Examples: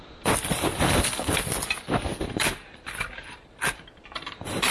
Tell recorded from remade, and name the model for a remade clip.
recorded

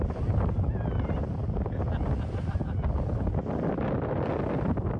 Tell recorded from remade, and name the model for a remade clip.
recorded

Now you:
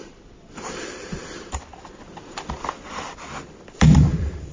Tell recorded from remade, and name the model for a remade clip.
remade, vocoder, BigVGAN v2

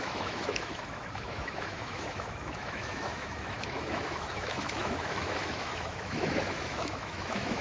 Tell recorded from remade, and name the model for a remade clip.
remade, autoencoder, DAC-VAE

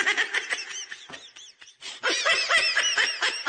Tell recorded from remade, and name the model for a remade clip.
recorded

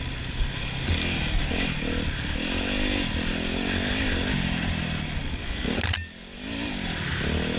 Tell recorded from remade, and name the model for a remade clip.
recorded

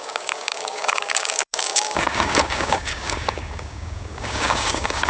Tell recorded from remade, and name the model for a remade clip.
remade, codec, DAC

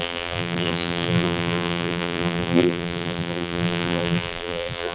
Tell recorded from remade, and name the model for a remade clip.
remade, vocoder, BigVGAN v2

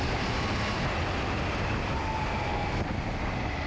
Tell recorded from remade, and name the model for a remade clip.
recorded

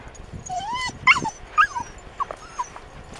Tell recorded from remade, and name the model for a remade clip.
recorded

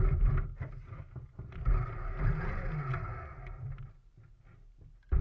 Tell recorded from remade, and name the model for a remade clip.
recorded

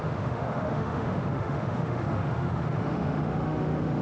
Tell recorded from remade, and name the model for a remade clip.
remade, autoencoder, DAC-VAE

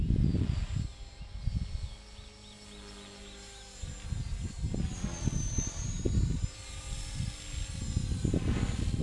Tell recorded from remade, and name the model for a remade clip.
recorded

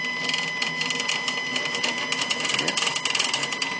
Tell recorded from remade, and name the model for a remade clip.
recorded